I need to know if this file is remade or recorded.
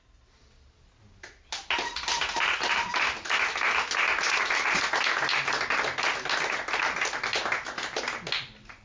recorded